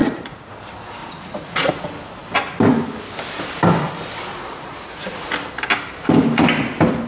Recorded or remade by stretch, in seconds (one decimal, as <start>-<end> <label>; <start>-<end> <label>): 0.0-0.5 remade; 0.5-1.0 recorded; 1.0-1.7 remade; 1.7-4.3 recorded; 4.3-5.3 remade; 5.3-7.1 recorded

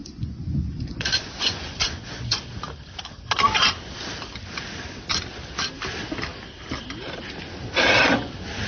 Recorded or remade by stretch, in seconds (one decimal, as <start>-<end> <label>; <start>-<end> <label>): 0.0-2.4 remade; 2.4-8.7 recorded

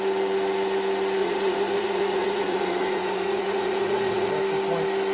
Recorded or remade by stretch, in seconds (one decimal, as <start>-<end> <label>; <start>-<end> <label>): 0.0-1.2 recorded; 1.2-4.3 remade; 4.3-5.1 recorded

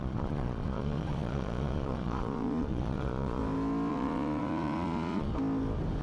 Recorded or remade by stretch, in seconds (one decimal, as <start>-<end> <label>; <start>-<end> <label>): 0.0-3.4 remade; 3.4-3.9 recorded; 3.9-5.3 remade; 5.3-6.0 recorded

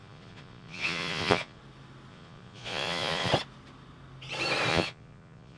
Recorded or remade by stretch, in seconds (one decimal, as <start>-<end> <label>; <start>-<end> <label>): 0.0-1.6 remade; 1.6-2.1 recorded; 2.1-3.3 remade; 3.3-4.7 recorded; 4.7-5.6 remade

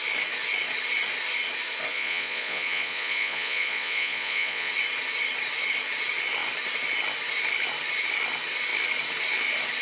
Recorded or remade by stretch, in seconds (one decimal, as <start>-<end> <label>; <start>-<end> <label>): 0.0-1.9 recorded; 1.9-4.7 remade; 4.7-9.8 recorded

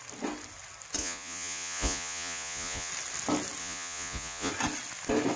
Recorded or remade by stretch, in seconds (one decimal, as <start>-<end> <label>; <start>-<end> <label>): 0.0-1.0 recorded; 1.0-2.9 remade; 2.9-3.6 recorded; 3.6-4.5 remade; 4.5-5.4 recorded